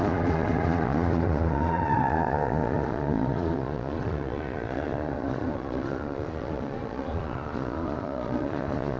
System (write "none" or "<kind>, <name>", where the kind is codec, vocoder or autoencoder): vocoder, Vocos